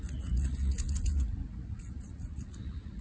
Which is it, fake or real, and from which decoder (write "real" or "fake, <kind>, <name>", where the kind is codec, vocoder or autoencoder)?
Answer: fake, vocoder, Vocos